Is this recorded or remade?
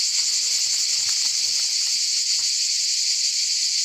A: remade